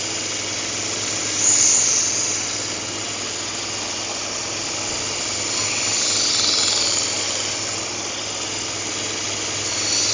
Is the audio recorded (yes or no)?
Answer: yes